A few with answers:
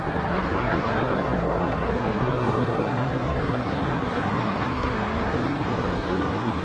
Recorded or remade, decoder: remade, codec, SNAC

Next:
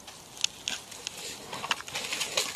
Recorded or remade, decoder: recorded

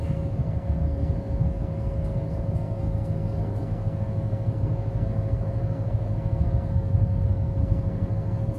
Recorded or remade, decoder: remade, codec, SNAC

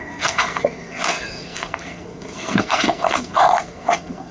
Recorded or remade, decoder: remade, codec, SNAC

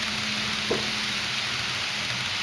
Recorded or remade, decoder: recorded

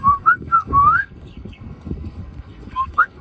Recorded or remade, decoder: remade, codec, SNAC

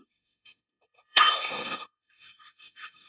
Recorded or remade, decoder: remade, codec, SNAC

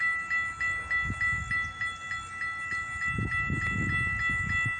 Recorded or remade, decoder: recorded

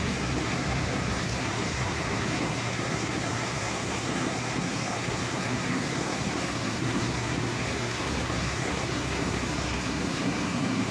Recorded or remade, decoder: remade, codec, SNAC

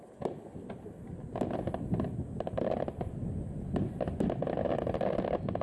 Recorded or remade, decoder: recorded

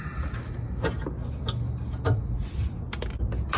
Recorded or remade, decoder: recorded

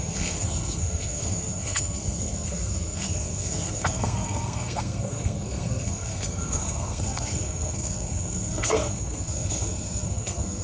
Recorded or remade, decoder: remade, codec, SNAC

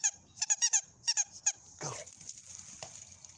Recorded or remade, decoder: recorded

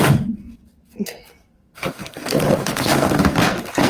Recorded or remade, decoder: remade, codec, SNAC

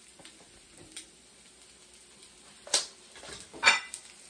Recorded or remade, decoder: recorded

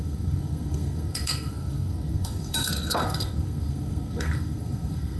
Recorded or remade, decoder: remade, codec, SNAC